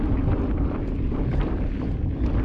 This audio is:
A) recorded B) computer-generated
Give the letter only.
A